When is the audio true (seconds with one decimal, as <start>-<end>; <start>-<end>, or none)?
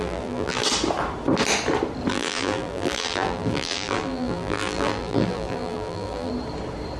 0.6-2.1; 6.3-7.0